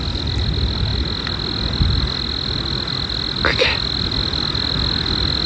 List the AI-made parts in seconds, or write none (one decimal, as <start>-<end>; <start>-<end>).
none